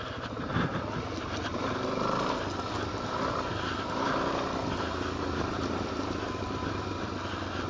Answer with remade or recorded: recorded